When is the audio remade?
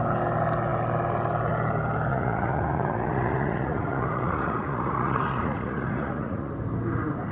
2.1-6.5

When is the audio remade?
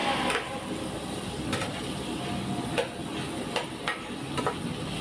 none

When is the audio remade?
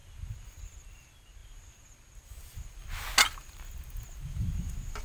none